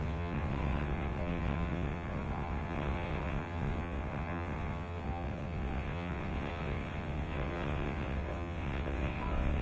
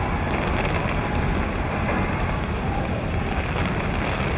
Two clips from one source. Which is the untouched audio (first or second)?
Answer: second